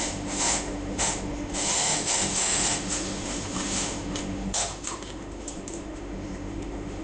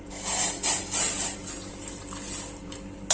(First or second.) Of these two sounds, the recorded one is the second